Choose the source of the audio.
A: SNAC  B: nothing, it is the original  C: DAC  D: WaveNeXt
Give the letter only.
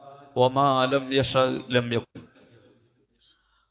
C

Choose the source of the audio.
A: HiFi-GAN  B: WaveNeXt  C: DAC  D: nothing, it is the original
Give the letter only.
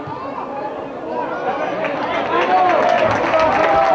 D